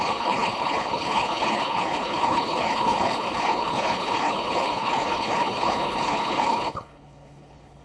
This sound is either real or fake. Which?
fake